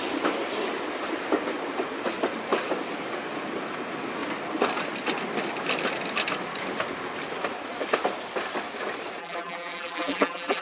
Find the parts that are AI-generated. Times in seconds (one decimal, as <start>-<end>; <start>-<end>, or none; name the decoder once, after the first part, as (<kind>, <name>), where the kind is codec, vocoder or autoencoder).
9.2-10.6 (vocoder, BigVGAN v2)